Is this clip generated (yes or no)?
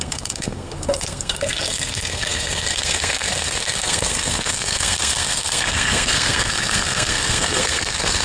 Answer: yes